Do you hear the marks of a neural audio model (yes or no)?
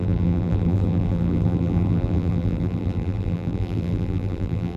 yes